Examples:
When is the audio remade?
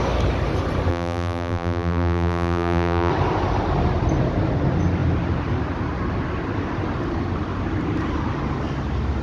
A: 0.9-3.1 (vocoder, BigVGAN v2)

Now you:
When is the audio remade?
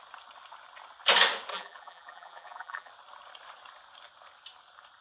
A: 1.5-2.9 (vocoder, BigVGAN v2)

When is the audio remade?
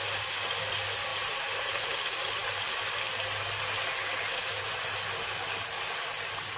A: 1.1-2.0 (vocoder, BigVGAN v2)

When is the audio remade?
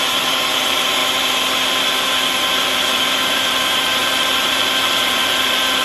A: 0.0-1.0 (vocoder, BigVGAN v2); 2.5-5.8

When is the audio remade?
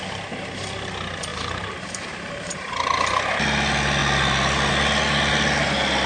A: 1.3-2.7 (vocoder, BigVGAN v2)